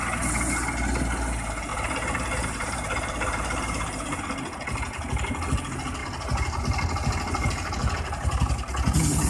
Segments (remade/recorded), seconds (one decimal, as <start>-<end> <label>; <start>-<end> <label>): 0.0-1.7 recorded; 1.7-4.2 remade; 4.2-6.0 recorded; 6.0-6.6 remade; 6.6-7.8 recorded; 7.8-8.7 remade; 8.7-9.3 recorded